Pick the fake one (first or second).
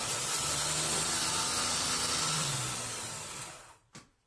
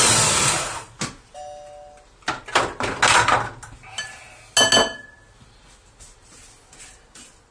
first